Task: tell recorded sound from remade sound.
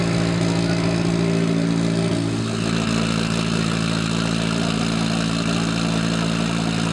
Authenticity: recorded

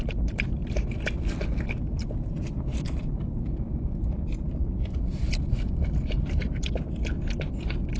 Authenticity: recorded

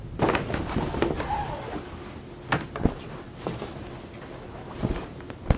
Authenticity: recorded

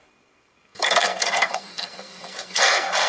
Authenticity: remade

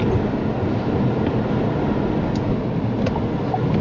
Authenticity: recorded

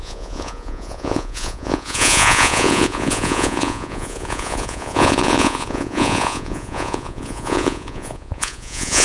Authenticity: remade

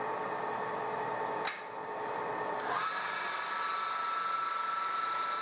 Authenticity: recorded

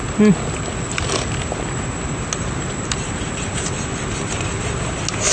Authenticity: recorded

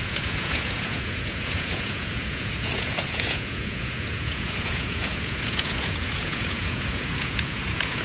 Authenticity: remade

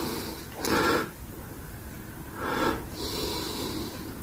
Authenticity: recorded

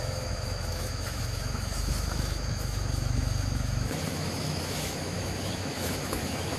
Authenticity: remade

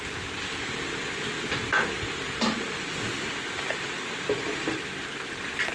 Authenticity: recorded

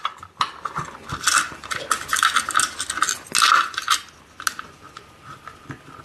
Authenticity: recorded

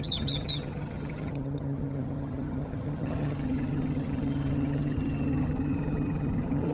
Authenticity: remade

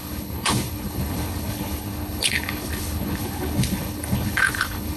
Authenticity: remade